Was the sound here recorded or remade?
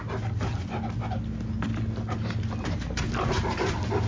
recorded